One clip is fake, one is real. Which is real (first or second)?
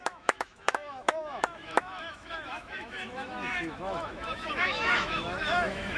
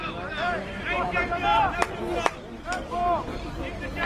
second